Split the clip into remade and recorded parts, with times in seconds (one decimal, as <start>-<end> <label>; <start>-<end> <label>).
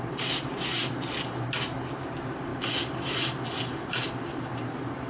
0.0-0.7 remade; 0.7-2.0 recorded; 2.0-2.5 remade; 2.5-3.6 recorded; 3.6-5.1 remade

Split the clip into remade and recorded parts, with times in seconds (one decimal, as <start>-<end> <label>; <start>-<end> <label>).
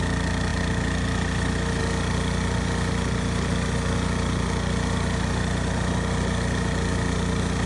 0.0-7.7 recorded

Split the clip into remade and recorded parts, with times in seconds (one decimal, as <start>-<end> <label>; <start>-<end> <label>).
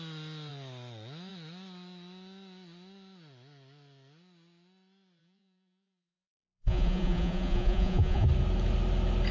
0.0-5.2 recorded; 5.2-8.3 remade; 8.3-9.3 recorded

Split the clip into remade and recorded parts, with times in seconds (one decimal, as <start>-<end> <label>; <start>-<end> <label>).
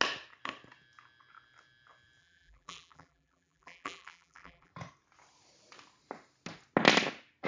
0.0-2.2 recorded; 2.2-4.7 remade; 4.7-7.5 recorded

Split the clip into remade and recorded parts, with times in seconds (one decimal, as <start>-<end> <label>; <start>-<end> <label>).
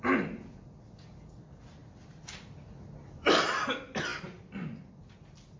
0.0-5.6 recorded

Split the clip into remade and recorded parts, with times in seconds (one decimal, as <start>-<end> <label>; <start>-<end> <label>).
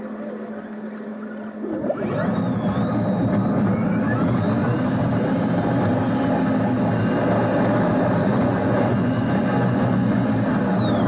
0.0-8.2 recorded; 8.2-10.3 remade; 10.3-11.1 recorded